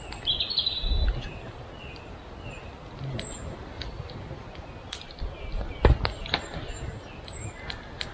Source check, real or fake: real